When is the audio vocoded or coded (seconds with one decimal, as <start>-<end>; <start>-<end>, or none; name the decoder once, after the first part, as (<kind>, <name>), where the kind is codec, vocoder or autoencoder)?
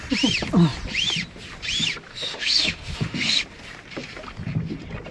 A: 2.1-3.4 (autoencoder, DAC-VAE)